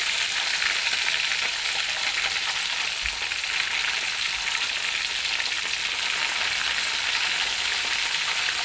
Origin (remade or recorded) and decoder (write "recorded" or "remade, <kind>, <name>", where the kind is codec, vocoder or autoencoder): recorded